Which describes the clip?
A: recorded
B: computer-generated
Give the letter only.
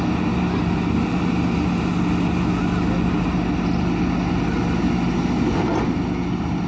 A